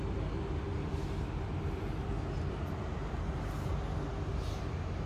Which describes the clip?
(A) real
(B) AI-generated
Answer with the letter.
A